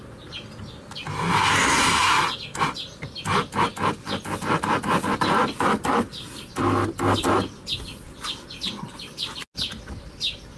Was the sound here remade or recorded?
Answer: recorded